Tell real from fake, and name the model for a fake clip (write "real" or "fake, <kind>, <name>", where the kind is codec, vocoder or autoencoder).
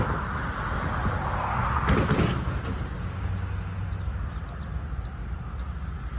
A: real